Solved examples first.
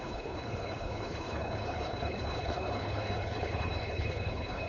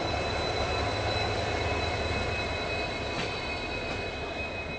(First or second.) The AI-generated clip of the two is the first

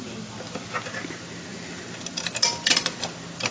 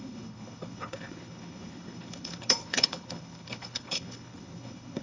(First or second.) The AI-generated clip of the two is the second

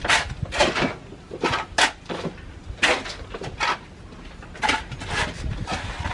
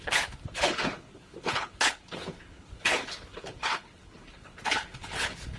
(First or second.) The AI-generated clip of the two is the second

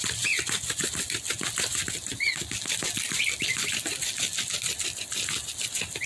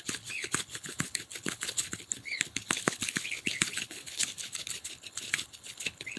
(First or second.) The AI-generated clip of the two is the second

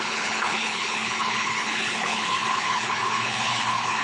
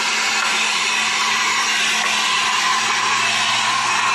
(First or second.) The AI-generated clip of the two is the first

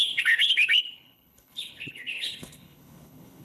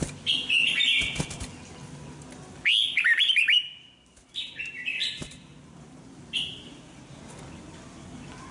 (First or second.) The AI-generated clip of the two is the first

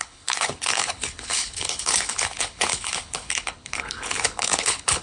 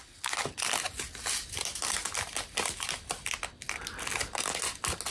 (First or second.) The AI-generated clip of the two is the first